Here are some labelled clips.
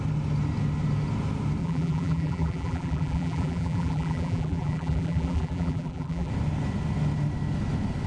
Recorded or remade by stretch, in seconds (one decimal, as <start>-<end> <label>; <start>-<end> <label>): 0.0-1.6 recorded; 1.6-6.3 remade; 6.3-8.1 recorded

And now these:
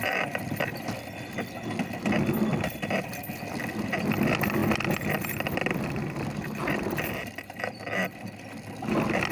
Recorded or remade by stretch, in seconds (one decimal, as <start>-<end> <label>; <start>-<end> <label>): 0.0-2.5 recorded; 2.5-3.1 remade; 3.1-9.3 recorded

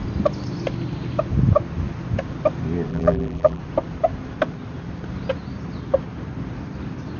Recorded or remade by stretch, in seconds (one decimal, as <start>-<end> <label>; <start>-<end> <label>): 0.0-2.9 recorded; 2.9-3.6 remade; 3.6-7.2 recorded